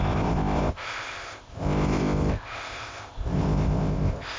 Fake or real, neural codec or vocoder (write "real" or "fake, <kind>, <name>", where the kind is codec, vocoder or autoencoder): fake, codec, ZipCodec